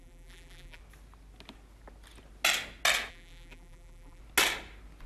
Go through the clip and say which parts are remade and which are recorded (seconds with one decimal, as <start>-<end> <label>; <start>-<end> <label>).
0.0-0.8 remade; 0.8-3.1 recorded; 3.1-4.2 remade; 4.2-5.1 recorded